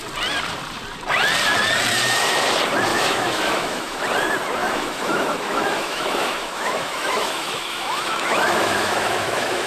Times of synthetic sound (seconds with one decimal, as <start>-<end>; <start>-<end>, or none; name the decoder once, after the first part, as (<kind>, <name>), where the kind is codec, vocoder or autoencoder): 2.9-4.0 (autoencoder, DAC-VAE); 4.6-9.7